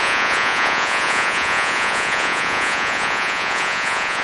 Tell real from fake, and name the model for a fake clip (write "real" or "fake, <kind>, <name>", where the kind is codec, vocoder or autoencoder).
fake, vocoder, Vocos